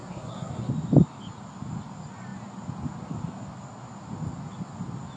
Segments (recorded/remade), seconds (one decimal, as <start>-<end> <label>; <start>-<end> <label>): 0.0-0.7 remade; 0.7-5.2 recorded